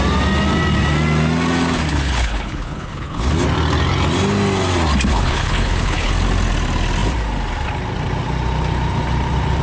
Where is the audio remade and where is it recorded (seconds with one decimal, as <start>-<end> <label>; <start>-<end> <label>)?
0.0-1.9 recorded; 1.9-3.3 remade; 3.3-5.1 recorded; 5.1-6.1 remade; 6.1-9.6 recorded